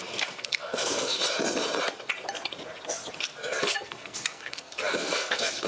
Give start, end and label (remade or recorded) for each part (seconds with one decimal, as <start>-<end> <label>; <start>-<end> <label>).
0.0-1.2 remade; 1.2-3.6 recorded; 3.6-5.7 remade